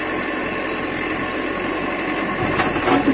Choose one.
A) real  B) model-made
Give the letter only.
A